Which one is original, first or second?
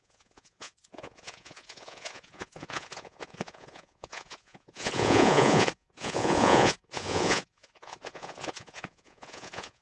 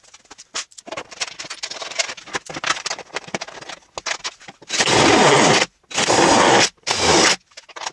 second